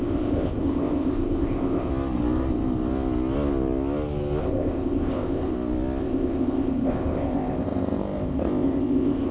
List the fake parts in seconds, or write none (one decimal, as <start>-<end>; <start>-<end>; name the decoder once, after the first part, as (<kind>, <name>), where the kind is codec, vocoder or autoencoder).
0.0-1.9 (codec, ZipCodec); 4.4-5.5; 6.0-9.3